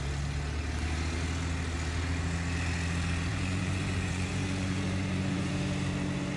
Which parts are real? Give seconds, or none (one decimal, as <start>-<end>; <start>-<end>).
0.0-3.3; 5.5-6.4

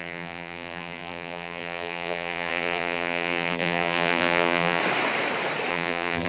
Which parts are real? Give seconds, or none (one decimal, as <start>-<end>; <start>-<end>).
4.8-5.7

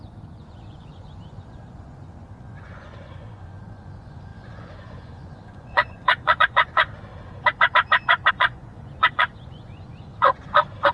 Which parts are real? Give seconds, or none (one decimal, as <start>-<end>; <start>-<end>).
7.1-8.3

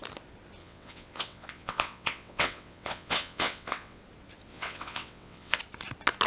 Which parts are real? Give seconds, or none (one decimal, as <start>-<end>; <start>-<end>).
0.0-0.6; 4.0-4.5; 5.6-6.3